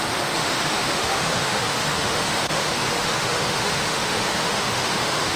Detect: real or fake fake